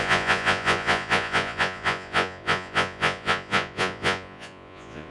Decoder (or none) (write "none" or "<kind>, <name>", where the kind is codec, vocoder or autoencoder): vocoder, Vocos